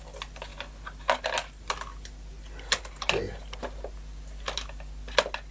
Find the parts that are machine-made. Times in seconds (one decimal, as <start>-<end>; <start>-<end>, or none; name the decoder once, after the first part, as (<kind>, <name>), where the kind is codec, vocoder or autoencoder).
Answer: none